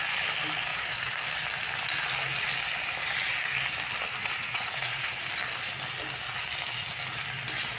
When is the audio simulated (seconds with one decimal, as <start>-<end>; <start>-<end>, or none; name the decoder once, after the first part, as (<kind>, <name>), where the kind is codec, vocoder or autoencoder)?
0.7-1.2 (vocoder, Vocos); 4.2-5.2